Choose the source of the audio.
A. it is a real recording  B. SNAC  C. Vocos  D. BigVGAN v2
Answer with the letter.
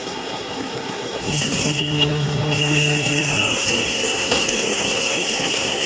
B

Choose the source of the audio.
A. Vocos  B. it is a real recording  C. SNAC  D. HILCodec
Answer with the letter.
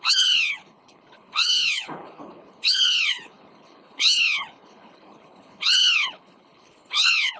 D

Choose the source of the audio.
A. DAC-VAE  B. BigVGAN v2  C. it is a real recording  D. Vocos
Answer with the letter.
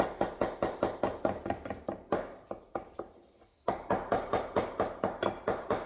B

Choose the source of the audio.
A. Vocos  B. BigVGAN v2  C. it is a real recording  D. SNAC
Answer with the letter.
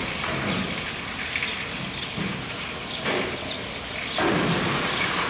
C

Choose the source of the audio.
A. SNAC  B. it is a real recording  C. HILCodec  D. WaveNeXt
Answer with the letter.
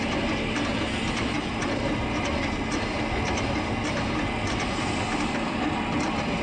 B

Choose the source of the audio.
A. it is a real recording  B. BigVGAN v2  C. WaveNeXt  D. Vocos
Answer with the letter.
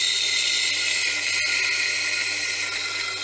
A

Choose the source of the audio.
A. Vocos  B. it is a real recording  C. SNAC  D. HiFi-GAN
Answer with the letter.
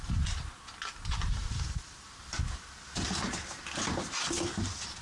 B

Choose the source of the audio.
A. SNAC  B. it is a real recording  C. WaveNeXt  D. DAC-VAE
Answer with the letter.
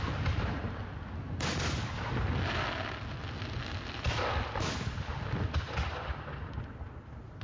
B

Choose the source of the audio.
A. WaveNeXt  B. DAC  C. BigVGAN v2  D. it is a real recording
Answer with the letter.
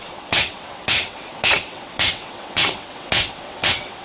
A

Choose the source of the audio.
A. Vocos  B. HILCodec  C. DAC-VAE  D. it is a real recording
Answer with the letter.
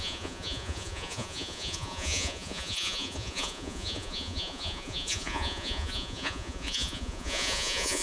A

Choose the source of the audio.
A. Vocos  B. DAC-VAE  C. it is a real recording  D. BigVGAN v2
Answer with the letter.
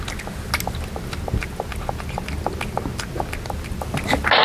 C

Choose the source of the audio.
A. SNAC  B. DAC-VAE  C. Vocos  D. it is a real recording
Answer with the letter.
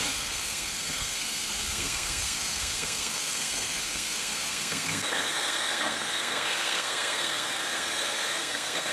A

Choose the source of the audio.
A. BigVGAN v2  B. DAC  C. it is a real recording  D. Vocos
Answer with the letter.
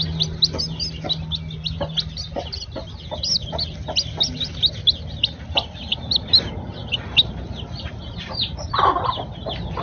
C